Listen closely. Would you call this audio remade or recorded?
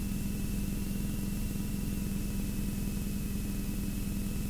recorded